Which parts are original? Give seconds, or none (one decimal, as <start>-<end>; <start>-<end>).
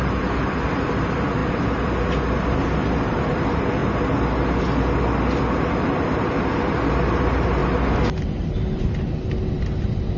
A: 0.0-1.4; 2.0-10.2